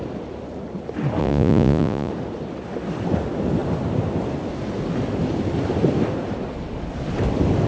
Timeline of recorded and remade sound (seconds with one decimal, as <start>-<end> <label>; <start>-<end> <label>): 0.0-1.2 recorded; 1.2-2.1 remade; 2.1-7.7 recorded